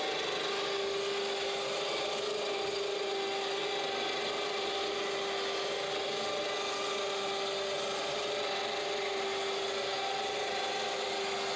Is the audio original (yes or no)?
yes